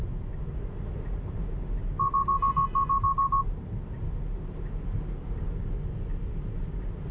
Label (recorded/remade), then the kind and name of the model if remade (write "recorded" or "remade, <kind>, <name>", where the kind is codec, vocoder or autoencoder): recorded